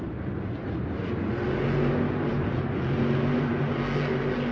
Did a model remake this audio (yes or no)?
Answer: no